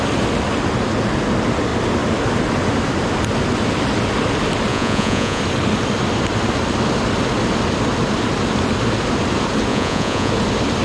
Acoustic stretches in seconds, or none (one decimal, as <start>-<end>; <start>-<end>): 0.0-4.7; 5.4-9.7; 10.3-10.8